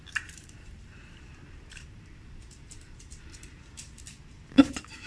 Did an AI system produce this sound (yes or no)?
yes